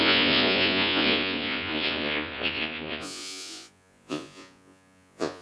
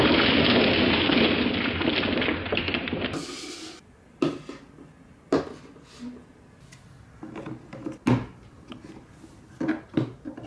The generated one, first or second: first